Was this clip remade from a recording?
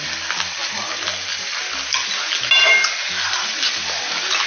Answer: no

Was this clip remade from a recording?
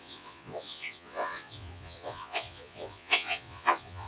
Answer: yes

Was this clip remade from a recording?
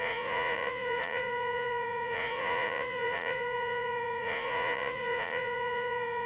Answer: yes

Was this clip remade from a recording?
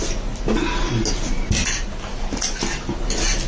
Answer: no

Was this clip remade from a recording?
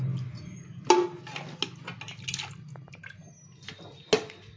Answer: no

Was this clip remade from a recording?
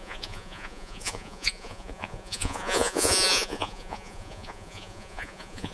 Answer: yes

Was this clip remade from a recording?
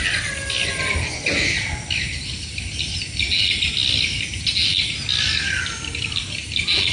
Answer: no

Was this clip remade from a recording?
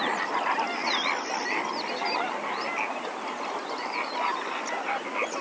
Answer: no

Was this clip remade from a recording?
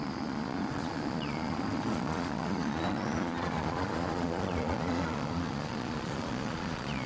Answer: yes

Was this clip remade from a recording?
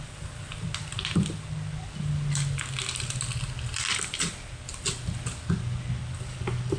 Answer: no